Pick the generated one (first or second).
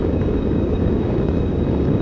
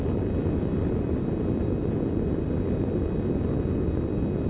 first